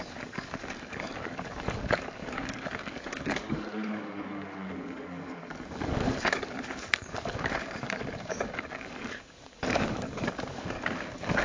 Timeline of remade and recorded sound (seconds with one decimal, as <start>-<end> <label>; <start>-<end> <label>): 0.0-11.4 remade